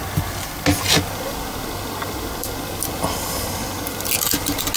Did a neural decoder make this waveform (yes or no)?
no